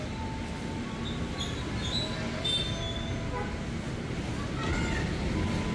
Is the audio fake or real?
real